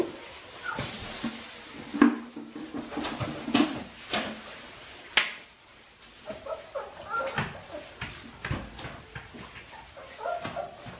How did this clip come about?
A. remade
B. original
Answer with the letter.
B